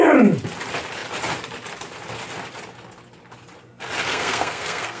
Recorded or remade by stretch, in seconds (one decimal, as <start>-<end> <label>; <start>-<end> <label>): 0.0-4.1 recorded; 4.1-5.0 remade